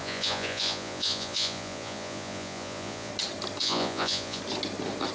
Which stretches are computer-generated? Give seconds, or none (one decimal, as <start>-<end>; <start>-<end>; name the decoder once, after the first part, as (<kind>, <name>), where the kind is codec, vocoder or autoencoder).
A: 0.0-3.1 (vocoder, Vocos); 3.6-4.4